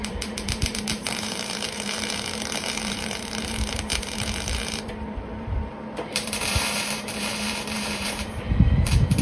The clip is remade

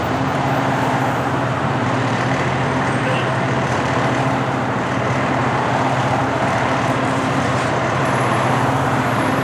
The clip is remade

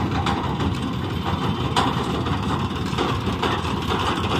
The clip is remade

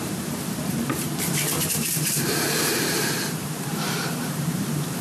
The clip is remade